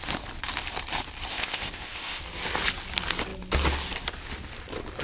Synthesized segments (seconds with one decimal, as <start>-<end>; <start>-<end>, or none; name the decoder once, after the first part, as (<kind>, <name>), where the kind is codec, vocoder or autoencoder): 1.3-2.2 (codec, ZipCodec)